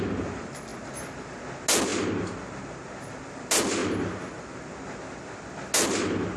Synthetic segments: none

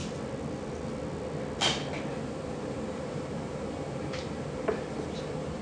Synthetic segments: 2.1-5.6 (vocoder, BigVGAN v2)

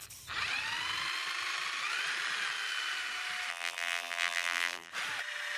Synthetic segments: 3.5-4.9 (vocoder, BigVGAN v2)

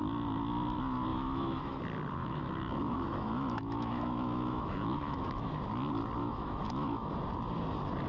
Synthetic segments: 1.1-1.8 (autoencoder, DAC-VAE); 2.2-5.5; 6.2-7.1

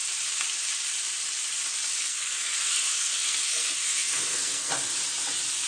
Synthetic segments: 2.0-4.7 (codec, SNAC)

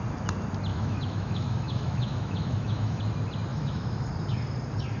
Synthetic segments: 0.7-3.0 (autoencoder, DAC-VAE); 3.5-4.1

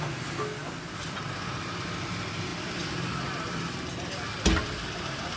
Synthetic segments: none